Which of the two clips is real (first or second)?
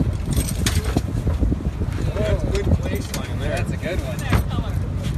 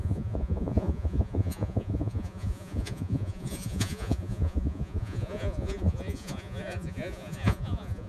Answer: first